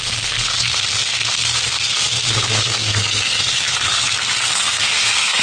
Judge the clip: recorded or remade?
remade